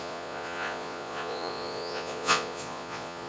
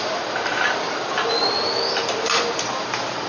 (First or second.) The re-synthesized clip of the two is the first